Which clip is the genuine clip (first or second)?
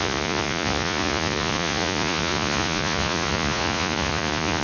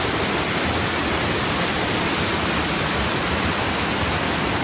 second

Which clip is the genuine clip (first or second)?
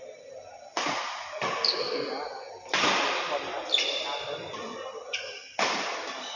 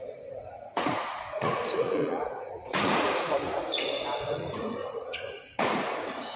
first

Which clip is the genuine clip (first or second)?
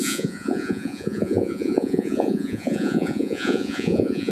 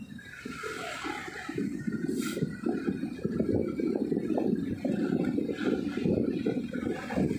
second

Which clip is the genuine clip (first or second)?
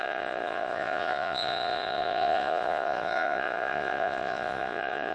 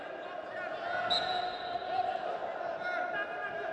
second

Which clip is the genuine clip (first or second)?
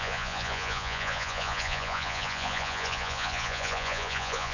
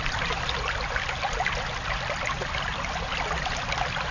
second